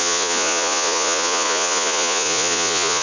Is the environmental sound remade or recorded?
remade